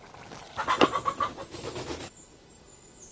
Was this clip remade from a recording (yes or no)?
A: no